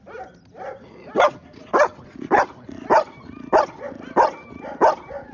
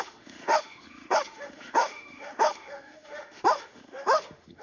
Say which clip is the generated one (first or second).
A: second